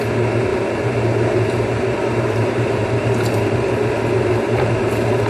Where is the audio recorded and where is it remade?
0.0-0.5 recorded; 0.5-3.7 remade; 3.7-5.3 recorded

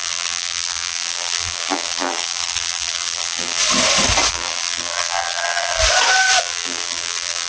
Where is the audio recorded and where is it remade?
0.0-3.6 remade; 3.6-4.3 recorded; 4.3-5.8 remade; 5.8-6.4 recorded; 6.4-7.5 remade